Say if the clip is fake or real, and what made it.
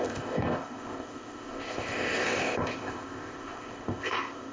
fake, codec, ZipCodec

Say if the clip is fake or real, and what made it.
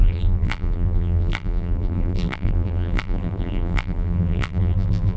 fake, vocoder, BigVGAN v2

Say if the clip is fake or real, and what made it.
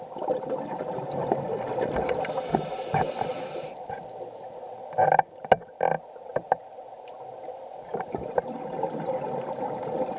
real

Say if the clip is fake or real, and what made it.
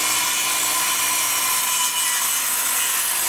real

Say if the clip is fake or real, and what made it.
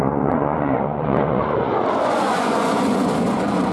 fake, vocoder, Vocos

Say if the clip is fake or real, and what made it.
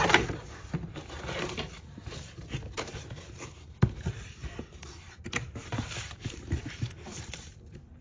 fake, vocoder, BigVGAN v2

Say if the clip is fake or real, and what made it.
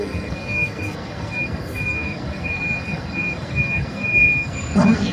fake, codec, SNAC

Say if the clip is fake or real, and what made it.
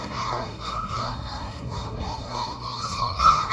fake, codec, SNAC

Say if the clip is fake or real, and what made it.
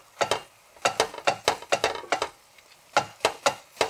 real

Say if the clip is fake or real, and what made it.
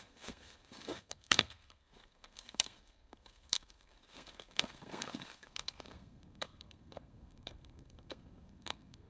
fake, codec, SNAC